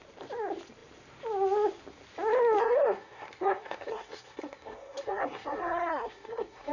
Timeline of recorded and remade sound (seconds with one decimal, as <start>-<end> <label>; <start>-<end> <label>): 0.0-2.6 recorded; 2.6-6.7 remade